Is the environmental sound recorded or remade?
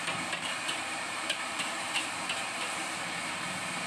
remade